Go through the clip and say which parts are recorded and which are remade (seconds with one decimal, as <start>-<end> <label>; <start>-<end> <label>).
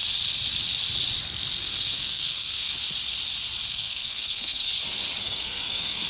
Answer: 0.0-1.6 recorded; 1.6-2.7 remade; 2.7-3.7 recorded; 3.7-4.7 remade; 4.7-5.2 recorded; 5.2-6.1 remade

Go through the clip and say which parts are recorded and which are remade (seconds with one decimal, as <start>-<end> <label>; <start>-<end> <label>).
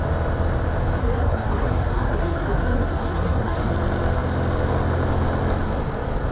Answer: 0.0-1.0 recorded; 1.0-3.7 remade; 3.7-6.3 recorded